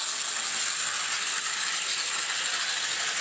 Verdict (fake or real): real